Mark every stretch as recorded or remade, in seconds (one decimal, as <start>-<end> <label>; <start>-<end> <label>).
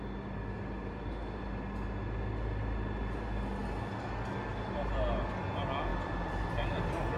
0.0-7.2 recorded